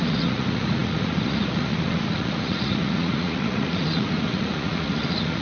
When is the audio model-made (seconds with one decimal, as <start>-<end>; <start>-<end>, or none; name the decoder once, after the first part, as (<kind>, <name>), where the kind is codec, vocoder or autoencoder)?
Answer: 0.0-5.4 (vocoder, Vocos)